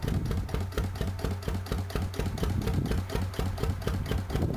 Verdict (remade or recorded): recorded